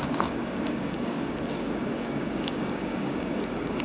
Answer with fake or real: fake